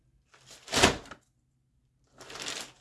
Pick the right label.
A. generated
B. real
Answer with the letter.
B